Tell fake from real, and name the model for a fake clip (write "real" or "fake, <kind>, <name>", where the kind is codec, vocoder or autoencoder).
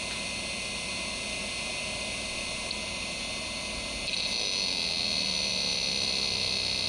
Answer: real